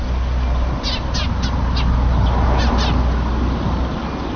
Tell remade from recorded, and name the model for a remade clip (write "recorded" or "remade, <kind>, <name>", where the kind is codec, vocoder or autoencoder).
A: recorded